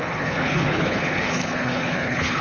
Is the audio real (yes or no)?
no